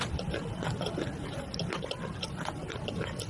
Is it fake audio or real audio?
real